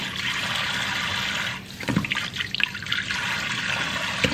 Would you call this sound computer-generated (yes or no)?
no